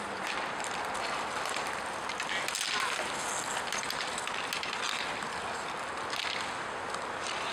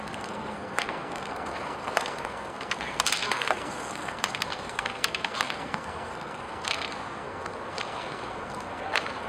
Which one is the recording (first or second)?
first